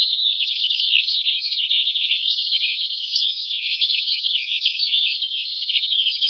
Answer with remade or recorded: remade